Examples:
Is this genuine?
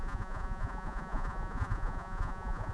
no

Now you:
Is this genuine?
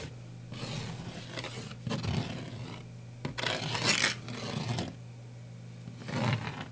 yes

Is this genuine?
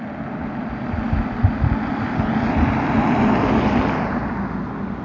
yes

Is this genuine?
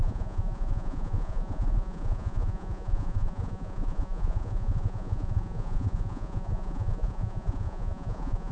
no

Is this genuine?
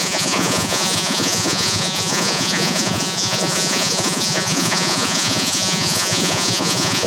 no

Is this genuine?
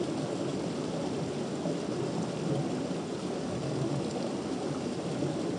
yes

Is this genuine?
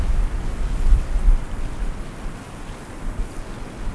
yes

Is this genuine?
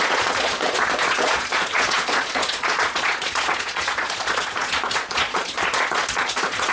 no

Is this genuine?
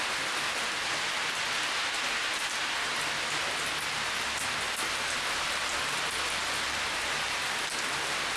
yes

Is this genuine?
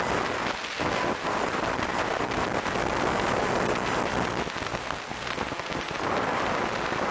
yes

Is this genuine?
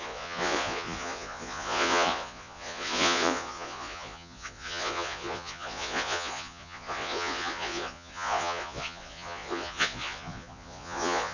no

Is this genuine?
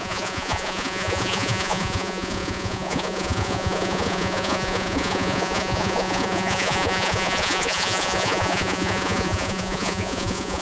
no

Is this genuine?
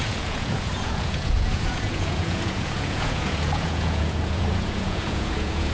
no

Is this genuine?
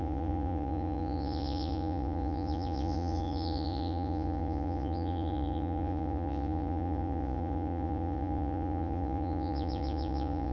no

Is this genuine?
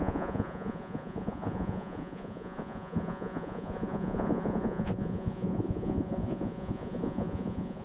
no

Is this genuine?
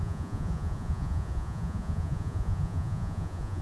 no